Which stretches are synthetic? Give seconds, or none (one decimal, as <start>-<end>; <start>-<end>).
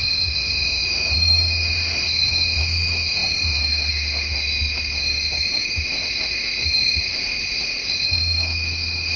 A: 0.0-9.2